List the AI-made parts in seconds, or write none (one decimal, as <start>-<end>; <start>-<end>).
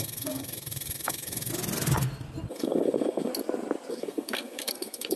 0.0-1.5; 2.5-3.3; 3.9-5.2